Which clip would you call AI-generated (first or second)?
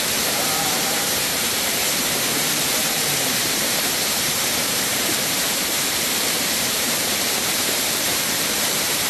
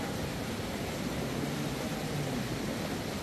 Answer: first